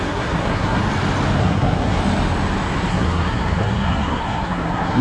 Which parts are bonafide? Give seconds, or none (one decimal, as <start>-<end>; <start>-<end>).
0.8-1.4; 2.0-2.9